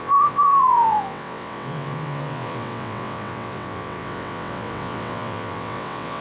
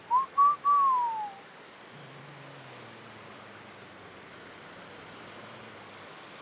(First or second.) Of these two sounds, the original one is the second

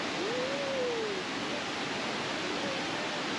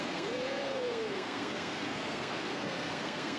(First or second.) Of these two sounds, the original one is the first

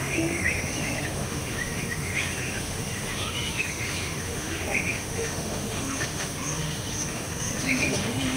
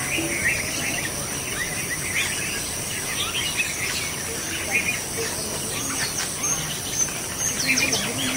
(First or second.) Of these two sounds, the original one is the second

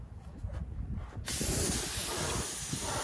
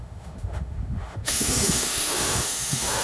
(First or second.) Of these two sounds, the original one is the first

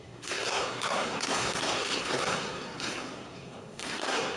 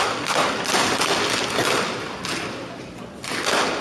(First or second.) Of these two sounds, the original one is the second